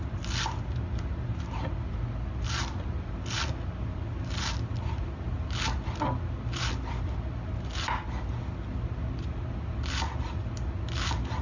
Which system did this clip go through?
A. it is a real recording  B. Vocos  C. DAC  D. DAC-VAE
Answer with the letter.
A